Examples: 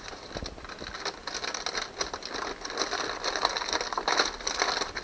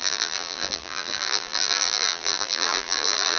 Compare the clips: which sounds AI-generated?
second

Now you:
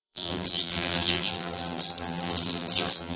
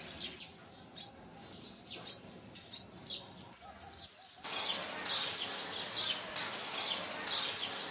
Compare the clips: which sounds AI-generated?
first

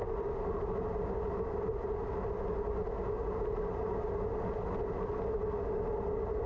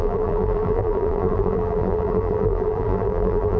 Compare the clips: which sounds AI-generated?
second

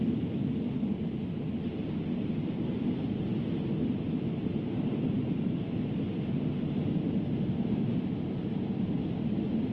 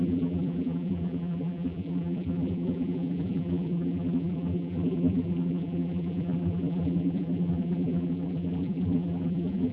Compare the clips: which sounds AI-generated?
second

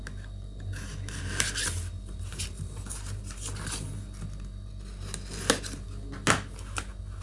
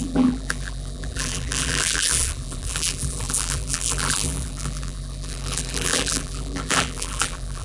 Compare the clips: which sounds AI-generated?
second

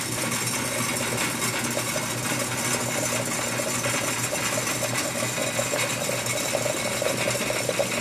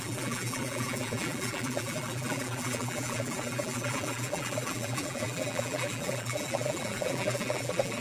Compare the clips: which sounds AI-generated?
second